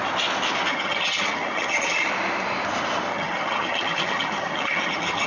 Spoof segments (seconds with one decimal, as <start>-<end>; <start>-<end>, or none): 0.7-2.1; 3.1-5.3